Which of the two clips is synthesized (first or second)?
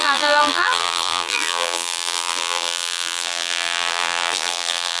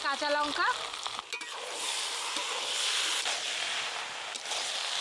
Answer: first